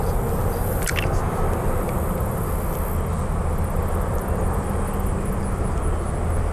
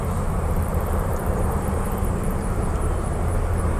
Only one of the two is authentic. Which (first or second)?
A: first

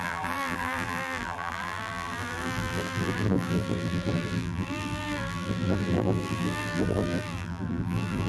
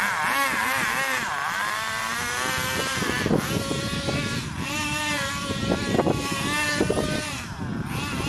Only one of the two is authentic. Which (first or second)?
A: second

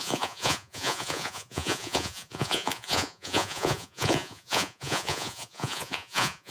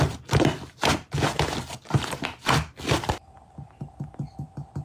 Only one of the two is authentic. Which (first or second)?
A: second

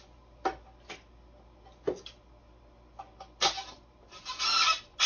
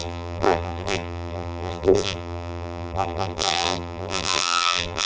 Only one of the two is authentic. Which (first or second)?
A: first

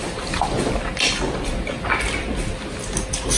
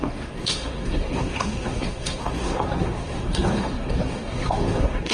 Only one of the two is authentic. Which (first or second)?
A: first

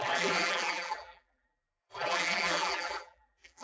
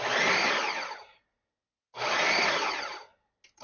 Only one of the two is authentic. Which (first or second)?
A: second